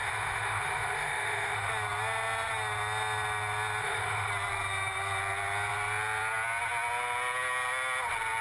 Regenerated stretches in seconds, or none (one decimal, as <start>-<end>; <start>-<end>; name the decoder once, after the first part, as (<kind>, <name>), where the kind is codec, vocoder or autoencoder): 0.0-1.7 (autoencoder, DAC-VAE); 3.8-4.3

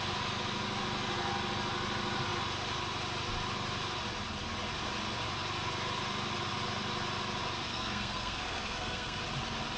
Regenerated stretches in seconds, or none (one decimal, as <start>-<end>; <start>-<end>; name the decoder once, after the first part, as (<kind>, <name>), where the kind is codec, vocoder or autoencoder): 7.7-9.2 (codec, SNAC)

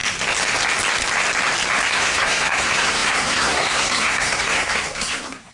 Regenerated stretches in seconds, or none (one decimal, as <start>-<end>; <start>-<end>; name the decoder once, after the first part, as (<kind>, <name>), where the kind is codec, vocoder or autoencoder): 1.9-5.5 (codec, SNAC)

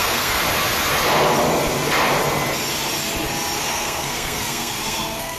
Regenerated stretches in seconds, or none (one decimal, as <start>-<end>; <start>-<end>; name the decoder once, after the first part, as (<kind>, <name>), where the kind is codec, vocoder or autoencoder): 0.0-0.4 (codec, SNAC); 3.6-5.4

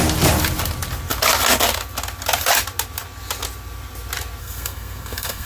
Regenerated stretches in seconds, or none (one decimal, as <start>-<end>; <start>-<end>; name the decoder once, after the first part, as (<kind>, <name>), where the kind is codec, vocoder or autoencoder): 4.4-5.5 (codec, SNAC)